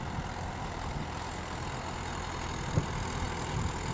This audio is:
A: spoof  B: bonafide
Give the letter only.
B